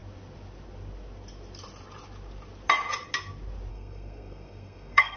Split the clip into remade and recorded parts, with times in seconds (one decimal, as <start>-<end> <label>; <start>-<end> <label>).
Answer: 0.0-3.7 recorded; 3.7-5.2 remade